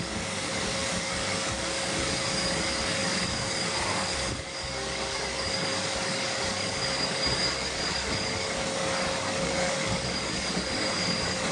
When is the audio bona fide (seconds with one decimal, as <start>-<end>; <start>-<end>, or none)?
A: none